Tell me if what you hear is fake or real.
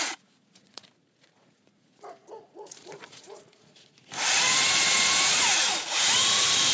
fake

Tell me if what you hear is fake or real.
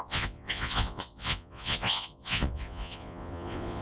fake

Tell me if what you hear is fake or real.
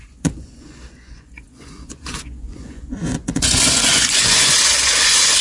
fake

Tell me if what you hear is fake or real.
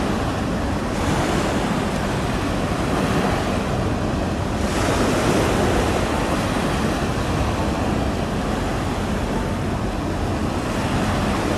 real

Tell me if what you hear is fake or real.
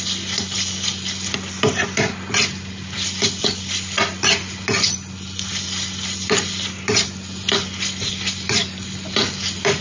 real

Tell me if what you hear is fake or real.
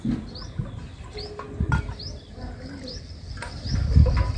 real